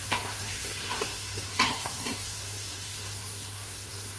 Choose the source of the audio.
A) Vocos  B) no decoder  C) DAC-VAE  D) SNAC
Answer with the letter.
D